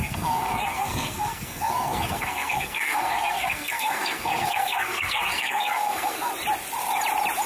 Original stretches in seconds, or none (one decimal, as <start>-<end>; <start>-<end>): 6.3-7.5

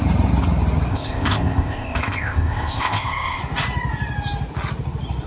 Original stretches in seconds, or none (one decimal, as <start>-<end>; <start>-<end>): 0.0-0.9; 3.4-5.3

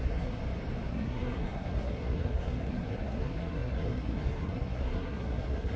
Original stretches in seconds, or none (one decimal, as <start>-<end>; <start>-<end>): 0.4-0.9